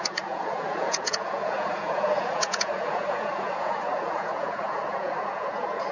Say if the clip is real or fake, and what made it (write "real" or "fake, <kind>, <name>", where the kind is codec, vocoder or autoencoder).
fake, vocoder, Vocos